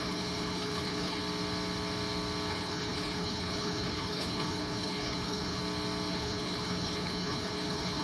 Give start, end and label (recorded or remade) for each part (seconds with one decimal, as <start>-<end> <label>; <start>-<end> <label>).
0.0-1.2 remade; 1.2-2.5 recorded; 2.5-5.6 remade; 5.6-6.1 recorded; 6.1-8.0 remade